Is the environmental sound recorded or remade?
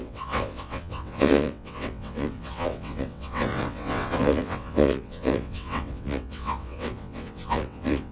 remade